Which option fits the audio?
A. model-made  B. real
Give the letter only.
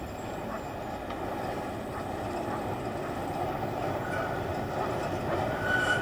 B